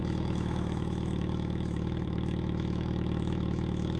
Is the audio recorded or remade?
remade